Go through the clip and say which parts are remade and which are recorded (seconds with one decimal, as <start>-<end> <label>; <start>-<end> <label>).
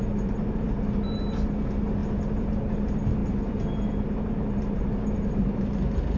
0.0-6.2 remade